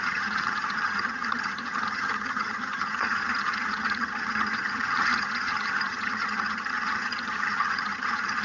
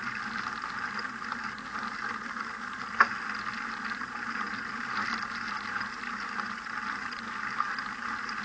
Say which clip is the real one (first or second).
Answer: second